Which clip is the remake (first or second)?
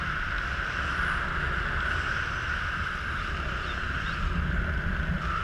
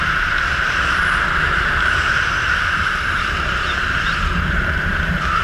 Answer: second